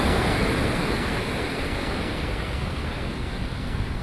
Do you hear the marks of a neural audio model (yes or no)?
yes